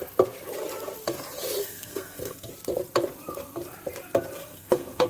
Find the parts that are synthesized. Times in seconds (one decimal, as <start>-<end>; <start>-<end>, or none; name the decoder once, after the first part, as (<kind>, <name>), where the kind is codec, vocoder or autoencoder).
1.6-2.5 (codec, SNAC); 4.4-5.1